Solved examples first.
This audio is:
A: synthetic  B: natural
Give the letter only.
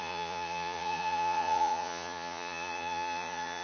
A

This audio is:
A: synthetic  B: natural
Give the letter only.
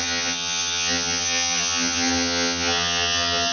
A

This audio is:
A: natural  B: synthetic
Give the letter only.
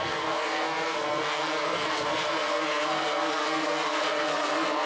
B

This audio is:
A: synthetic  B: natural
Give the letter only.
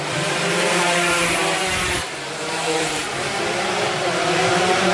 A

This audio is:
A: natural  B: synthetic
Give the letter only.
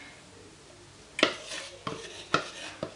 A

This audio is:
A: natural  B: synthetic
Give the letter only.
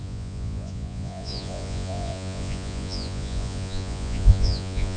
B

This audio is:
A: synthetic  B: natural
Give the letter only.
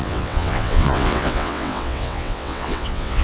A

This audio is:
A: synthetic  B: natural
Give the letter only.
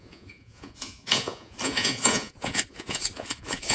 A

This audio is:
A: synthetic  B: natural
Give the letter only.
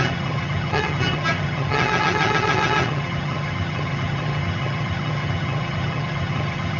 A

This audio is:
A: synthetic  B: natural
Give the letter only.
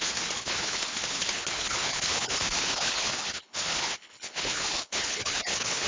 A